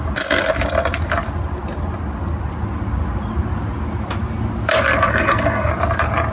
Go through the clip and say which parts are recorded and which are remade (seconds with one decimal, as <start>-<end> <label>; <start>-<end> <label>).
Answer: 0.0-5.1 recorded; 5.1-5.7 remade; 5.7-6.3 recorded